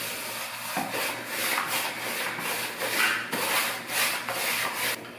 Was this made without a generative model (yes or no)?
yes